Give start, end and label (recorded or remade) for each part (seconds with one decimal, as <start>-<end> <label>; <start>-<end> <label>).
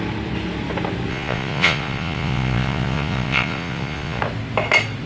0.0-1.1 recorded; 1.1-4.2 remade; 4.2-5.1 recorded